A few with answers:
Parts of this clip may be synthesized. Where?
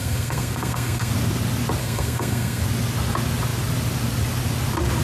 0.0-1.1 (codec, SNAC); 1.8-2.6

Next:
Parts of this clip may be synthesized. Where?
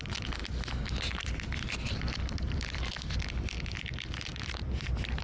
none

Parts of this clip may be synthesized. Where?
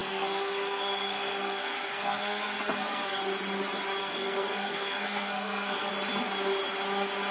0.0-3.2 (codec, SNAC); 4.0-5.9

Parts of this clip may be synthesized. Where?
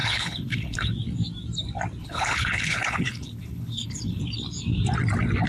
0.0-0.9 (codec, HILCodec); 2.0-4.2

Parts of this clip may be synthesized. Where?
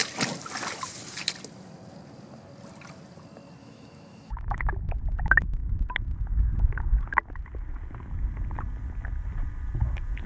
3.6-5.0 (autoencoder, DAC-VAE)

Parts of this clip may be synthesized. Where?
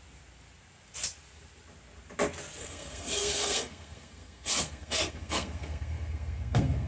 2.6-6.9 (codec, SNAC)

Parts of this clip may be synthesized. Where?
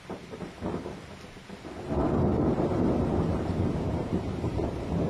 2.3-5.1 (vocoder, BigVGAN v2)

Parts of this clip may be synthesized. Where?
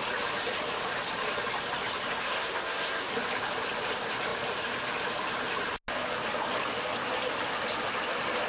2.2-3.1 (codec, SNAC)